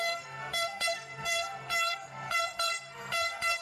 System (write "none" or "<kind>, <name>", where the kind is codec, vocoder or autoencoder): codec, SNAC